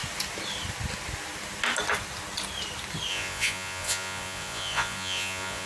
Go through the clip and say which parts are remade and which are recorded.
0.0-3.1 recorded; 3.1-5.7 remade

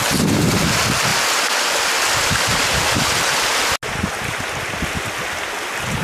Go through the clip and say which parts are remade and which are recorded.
0.0-6.0 recorded

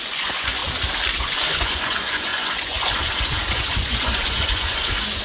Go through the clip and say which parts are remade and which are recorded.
0.0-0.6 remade; 0.6-1.1 recorded; 1.1-5.2 remade